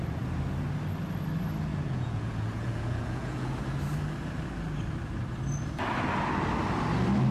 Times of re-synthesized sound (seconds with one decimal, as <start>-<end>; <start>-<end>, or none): 1.7-3.6